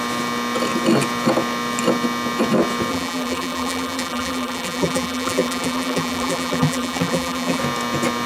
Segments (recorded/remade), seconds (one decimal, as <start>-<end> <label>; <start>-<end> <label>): 0.0-2.9 recorded; 2.9-7.6 remade; 7.6-8.3 recorded